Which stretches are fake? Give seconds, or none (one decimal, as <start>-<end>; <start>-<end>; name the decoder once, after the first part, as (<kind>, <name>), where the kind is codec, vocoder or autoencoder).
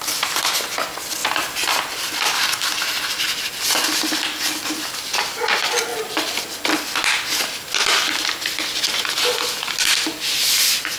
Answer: none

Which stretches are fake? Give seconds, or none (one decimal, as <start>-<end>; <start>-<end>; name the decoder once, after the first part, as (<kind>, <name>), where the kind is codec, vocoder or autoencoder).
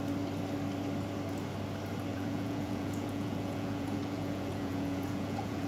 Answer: 2.1-5.7 (vocoder, Vocos)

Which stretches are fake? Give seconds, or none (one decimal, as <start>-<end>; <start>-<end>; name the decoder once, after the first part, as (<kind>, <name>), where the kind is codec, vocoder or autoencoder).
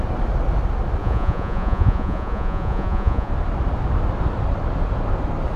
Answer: 1.0-3.3 (vocoder, Vocos)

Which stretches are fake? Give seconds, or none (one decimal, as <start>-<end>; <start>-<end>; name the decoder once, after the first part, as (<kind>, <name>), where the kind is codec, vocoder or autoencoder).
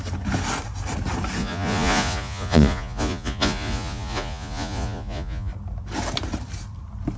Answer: 1.4-5.5 (vocoder, Vocos)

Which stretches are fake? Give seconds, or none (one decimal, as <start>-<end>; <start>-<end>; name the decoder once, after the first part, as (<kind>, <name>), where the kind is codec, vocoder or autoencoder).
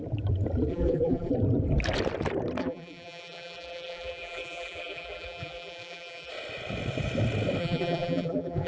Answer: 0.7-1.3 (vocoder, BigVGAN v2); 2.6-6.3; 7.6-8.7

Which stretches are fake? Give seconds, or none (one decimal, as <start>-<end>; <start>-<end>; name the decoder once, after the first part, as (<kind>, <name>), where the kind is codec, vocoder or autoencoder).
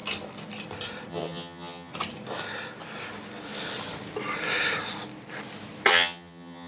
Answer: 1.1-1.9 (vocoder, HiFi-GAN); 5.9-6.7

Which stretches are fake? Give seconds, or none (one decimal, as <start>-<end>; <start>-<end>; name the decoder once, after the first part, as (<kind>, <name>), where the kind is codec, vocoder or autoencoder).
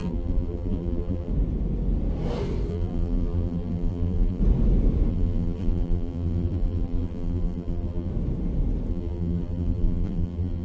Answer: 0.0-1.3 (vocoder, BigVGAN v2); 2.7-4.4; 5.1-8.1; 8.9-10.6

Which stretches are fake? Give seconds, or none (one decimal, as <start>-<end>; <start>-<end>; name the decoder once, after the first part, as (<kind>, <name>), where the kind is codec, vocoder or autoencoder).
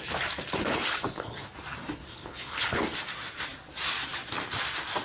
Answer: 0.6-1.5 (codec, HILCodec); 2.0-2.8